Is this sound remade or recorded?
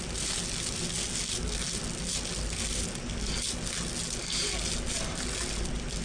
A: recorded